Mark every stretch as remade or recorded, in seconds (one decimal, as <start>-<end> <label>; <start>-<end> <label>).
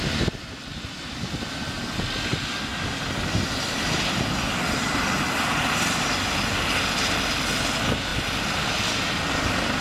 0.0-9.8 recorded